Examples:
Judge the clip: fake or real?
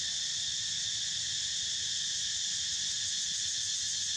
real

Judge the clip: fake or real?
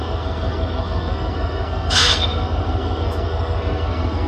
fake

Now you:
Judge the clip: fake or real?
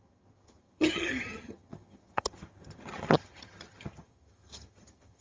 fake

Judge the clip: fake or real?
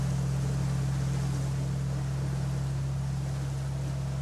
real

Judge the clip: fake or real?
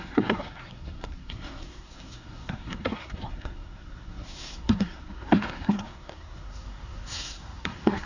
fake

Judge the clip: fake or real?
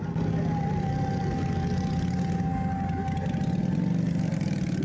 real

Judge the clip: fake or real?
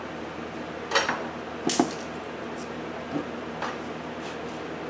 real